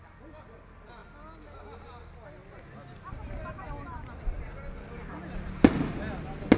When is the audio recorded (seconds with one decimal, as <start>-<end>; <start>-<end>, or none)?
0.0-6.6

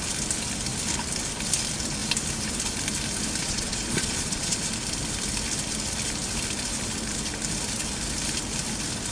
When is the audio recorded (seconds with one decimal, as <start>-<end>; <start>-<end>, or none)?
0.0-3.4; 4.7-9.1

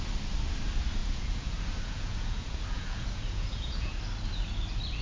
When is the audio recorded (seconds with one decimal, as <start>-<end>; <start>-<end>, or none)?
0.0-1.0; 4.0-5.0

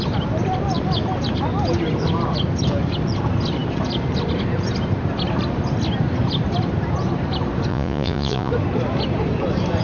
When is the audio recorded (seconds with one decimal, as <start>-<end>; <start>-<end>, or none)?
0.0-7.7; 8.5-9.8